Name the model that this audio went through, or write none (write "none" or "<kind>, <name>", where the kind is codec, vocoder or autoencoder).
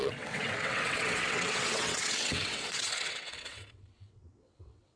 vocoder, WaveNeXt